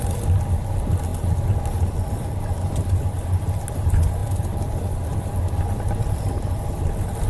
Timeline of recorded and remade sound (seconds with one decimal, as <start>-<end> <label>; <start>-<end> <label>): 0.0-7.3 recorded